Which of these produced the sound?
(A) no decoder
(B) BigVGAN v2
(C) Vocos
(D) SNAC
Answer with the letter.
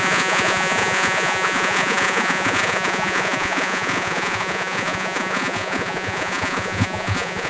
C